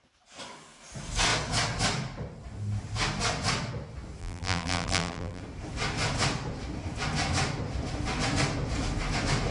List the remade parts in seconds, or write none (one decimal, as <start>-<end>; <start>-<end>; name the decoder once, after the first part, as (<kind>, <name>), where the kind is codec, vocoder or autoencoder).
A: 4.2-5.4 (vocoder, BigVGAN v2)